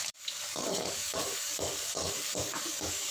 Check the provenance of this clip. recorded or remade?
remade